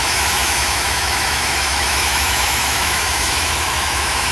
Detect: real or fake fake